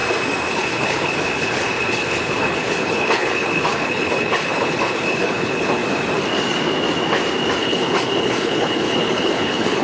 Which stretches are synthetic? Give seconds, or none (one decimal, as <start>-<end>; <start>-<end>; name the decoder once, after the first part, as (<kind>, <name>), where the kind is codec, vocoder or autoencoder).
0.5-5.8 (codec, HILCodec); 7.6-9.8